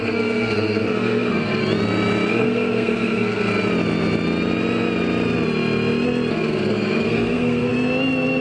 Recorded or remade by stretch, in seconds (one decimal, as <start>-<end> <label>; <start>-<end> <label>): 0.0-1.6 remade; 1.6-2.3 recorded; 2.3-3.5 remade; 3.5-6.3 recorded; 6.3-7.7 remade; 7.7-8.4 recorded